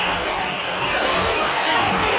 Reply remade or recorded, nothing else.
remade